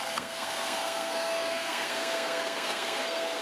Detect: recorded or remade remade